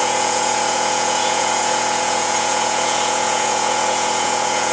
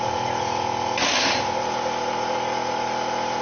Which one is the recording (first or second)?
second